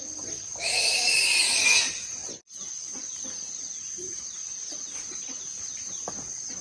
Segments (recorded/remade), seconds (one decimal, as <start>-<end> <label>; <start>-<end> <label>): 0.0-6.6 recorded